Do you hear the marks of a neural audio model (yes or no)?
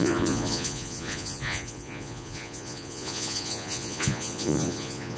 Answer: yes